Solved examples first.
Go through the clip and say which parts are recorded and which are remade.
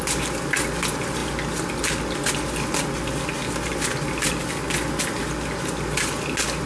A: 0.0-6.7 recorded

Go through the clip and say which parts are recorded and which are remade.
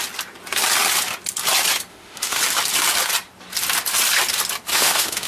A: 0.0-1.9 recorded; 1.9-2.4 remade; 2.4-4.7 recorded; 4.7-5.3 remade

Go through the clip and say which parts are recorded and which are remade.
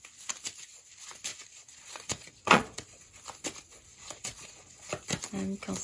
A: 0.0-1.3 recorded; 1.3-3.0 remade; 3.0-3.9 recorded; 3.9-4.9 remade; 4.9-5.8 recorded